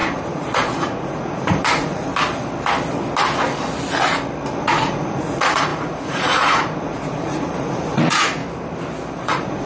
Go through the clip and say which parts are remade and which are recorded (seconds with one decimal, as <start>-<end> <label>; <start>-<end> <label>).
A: 0.0-2.1 remade; 2.1-4.6 recorded; 4.6-8.4 remade; 8.4-9.1 recorded; 9.1-9.7 remade